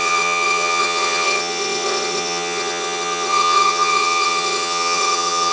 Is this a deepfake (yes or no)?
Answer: yes